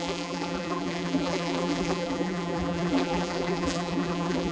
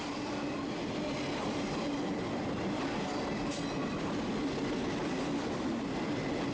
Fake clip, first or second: first